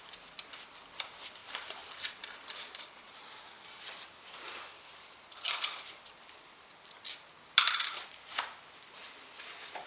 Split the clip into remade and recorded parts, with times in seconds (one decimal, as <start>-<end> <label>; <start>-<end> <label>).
0.0-1.4 recorded; 1.4-3.0 remade; 3.0-9.9 recorded